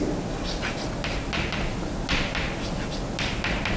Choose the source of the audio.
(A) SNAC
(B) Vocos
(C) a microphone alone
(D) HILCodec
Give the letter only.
C